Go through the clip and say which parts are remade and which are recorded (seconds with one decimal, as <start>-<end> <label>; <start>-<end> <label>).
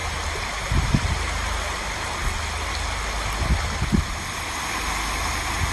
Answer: 0.0-5.7 recorded